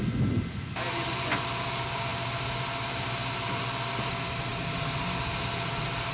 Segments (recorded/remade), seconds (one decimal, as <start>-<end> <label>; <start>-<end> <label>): 0.0-6.1 recorded